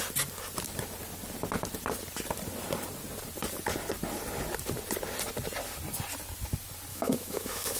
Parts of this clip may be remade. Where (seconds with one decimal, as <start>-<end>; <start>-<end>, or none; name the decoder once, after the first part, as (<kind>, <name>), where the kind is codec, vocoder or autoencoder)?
6.9-7.8 (autoencoder, DAC-VAE)